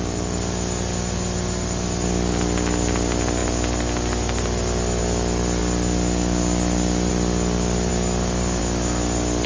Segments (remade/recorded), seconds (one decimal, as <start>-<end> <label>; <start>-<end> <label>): 0.0-9.5 recorded